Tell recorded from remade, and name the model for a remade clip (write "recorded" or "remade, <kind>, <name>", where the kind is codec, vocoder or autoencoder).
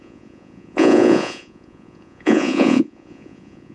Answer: remade, vocoder, Vocos